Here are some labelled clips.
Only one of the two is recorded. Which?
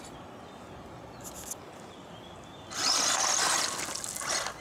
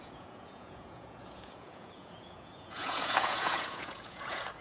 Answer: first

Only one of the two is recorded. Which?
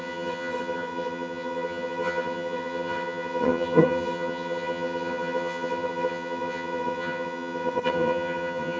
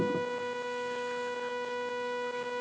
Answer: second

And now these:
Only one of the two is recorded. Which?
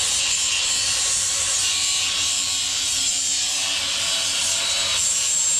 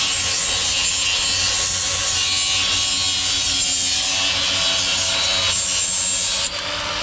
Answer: second